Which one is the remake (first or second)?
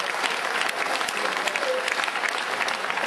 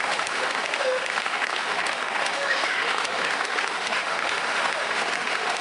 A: second